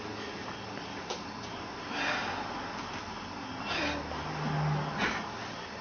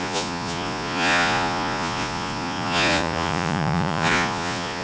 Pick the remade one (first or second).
second